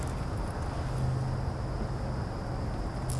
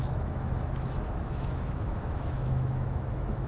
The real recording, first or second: first